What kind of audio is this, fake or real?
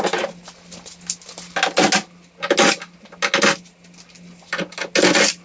real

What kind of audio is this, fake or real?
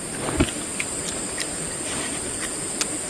real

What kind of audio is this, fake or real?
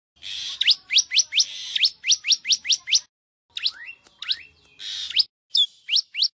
real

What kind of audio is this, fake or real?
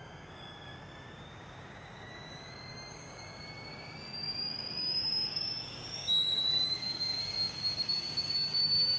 fake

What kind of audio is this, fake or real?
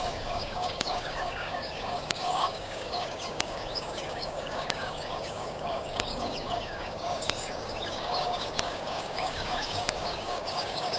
fake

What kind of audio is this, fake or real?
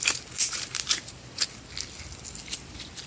real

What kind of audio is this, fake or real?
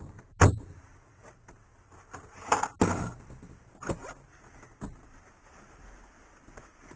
real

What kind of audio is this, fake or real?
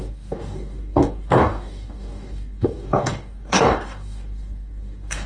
fake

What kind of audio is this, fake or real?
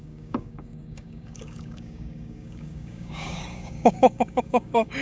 fake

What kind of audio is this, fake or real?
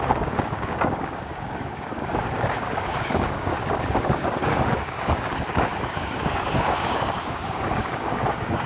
fake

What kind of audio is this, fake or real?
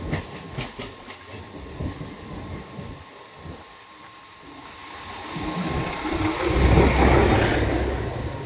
real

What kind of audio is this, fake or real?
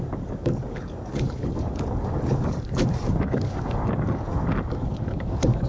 fake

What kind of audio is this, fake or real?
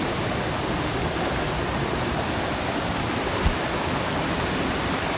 real